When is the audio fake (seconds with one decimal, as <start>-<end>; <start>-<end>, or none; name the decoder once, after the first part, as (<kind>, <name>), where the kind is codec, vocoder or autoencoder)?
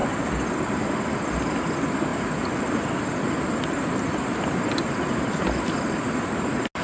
none